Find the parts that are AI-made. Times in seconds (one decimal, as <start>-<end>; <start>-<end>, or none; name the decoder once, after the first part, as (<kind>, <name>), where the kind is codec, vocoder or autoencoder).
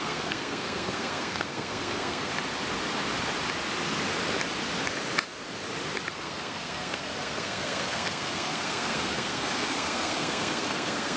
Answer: 0.0-2.3 (codec, SNAC); 6.1-11.2